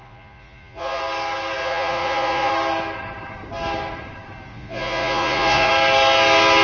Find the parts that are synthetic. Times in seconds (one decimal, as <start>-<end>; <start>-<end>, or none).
0.0-1.0; 1.6-2.5; 4.5-5.7